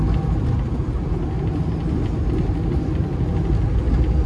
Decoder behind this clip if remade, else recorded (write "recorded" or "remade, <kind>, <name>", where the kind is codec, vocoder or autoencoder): recorded